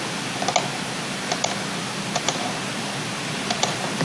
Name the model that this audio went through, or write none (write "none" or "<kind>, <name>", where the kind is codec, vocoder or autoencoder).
none